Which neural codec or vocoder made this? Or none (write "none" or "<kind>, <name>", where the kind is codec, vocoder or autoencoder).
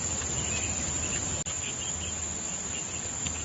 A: none